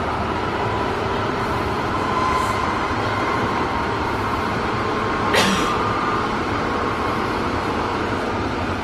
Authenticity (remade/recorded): remade